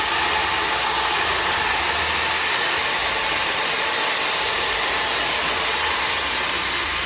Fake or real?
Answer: real